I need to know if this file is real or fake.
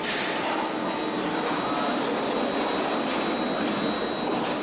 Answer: real